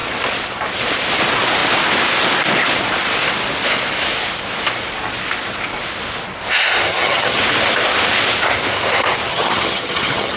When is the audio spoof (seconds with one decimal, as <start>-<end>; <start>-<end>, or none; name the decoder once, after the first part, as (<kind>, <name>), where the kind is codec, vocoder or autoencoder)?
6.9-7.4 (vocoder, HiFi-GAN); 9.3-10.4